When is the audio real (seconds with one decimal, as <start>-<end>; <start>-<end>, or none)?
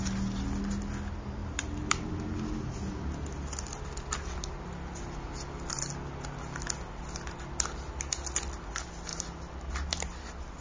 0.0-1.4; 2.1-9.1; 10.2-10.6